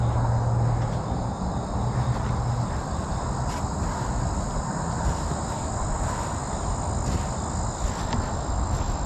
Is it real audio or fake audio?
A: real